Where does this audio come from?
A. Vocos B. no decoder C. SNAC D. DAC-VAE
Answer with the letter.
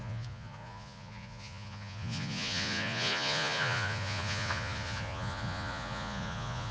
A